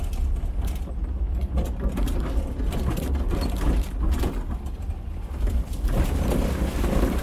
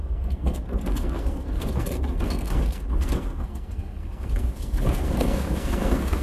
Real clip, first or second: first